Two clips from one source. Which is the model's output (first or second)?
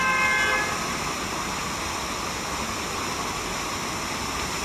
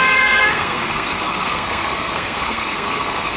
second